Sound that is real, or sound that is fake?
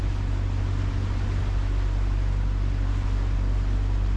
real